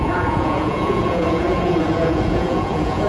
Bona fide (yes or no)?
no